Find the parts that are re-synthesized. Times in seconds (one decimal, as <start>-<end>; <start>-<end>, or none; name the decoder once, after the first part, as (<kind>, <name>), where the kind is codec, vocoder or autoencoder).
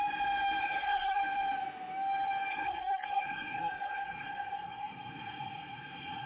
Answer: 0.6-1.2 (codec, SNAC); 2.5-6.3